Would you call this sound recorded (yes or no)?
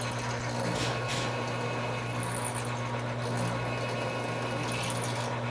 yes